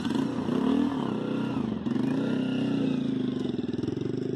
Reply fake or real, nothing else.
real